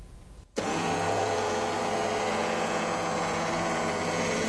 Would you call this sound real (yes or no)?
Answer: no